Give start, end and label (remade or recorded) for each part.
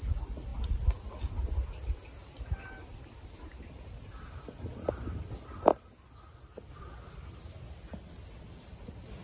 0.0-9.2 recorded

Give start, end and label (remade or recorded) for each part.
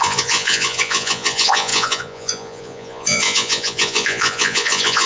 0.0-5.1 remade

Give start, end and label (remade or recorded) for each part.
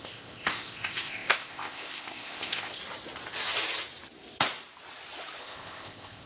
0.0-2.8 remade; 2.8-5.4 recorded; 5.4-6.3 remade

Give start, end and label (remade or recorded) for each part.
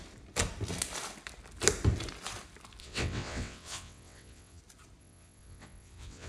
0.0-2.8 recorded; 2.8-4.6 remade; 4.6-5.0 recorded; 5.0-6.3 remade